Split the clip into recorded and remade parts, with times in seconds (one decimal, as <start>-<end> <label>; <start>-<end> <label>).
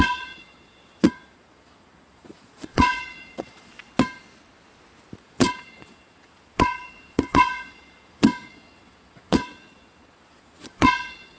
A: 0.0-3.7 remade; 3.7-5.2 recorded; 5.2-11.4 remade